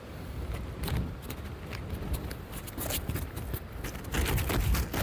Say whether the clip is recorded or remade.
recorded